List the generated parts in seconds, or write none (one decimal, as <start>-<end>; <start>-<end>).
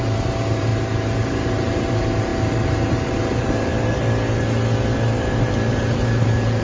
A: 0.0-0.7; 1.5-3.7; 5.7-6.6